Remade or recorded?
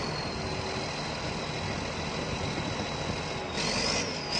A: recorded